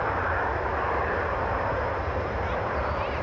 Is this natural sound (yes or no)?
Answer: no